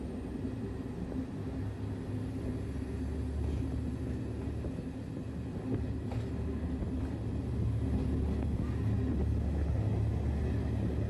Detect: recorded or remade recorded